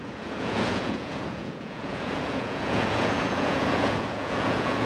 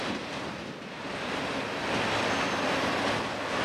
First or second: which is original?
second